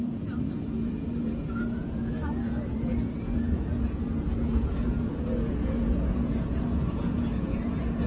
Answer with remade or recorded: remade